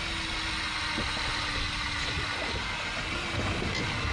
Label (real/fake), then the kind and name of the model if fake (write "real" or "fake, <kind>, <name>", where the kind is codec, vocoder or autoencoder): real